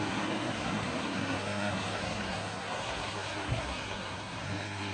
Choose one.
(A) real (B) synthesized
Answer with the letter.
B